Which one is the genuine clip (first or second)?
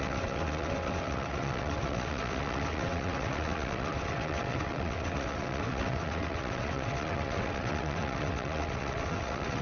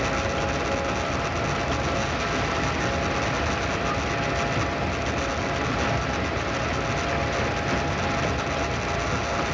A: second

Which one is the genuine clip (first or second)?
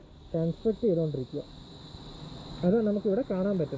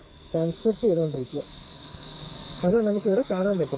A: first